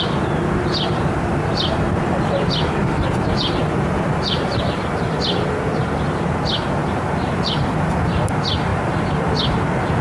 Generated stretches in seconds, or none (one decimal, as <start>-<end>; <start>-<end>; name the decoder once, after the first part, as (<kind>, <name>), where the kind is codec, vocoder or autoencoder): 2.8-5.2 (vocoder, BigVGAN v2); 6.8-8.1